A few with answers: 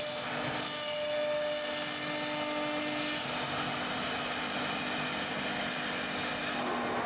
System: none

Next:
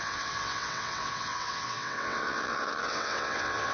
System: vocoder, WaveNeXt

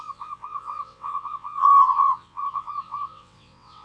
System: vocoder, WaveNeXt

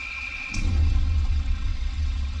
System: vocoder, WaveNeXt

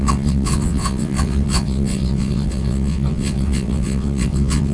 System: vocoder, WaveNeXt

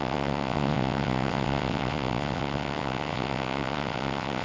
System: vocoder, WaveNeXt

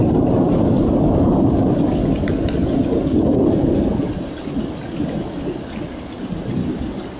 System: none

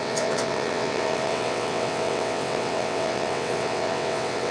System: vocoder, WaveNeXt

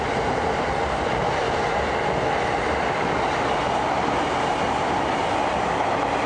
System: none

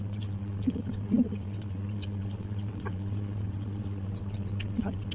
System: vocoder, WaveNeXt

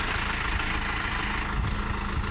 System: none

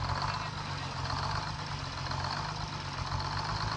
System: none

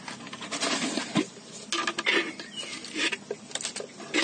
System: none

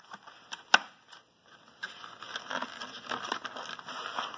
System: none